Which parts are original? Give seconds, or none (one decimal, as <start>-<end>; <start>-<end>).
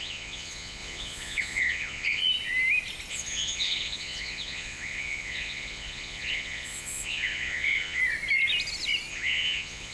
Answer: 2.2-3.1; 8.0-9.1